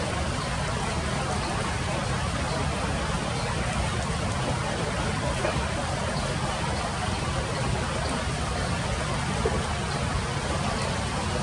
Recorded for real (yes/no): yes